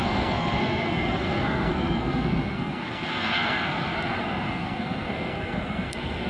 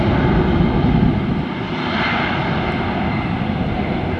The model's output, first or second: first